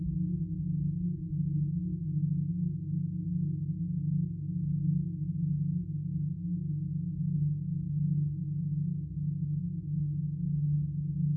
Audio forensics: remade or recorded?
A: recorded